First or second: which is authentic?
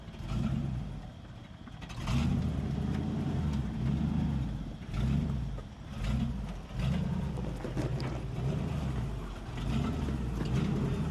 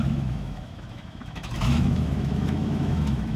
first